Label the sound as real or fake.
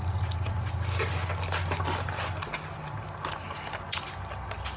real